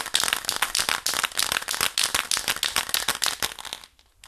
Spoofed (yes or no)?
no